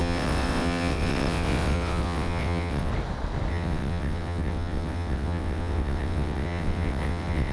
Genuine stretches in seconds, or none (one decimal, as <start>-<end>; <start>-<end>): 2.9-3.5